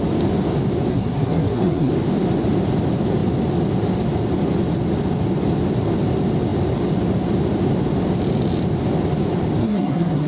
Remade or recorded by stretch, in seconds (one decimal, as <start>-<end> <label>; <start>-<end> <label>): 0.0-0.9 recorded; 0.9-1.9 remade; 1.9-9.6 recorded; 9.6-10.3 remade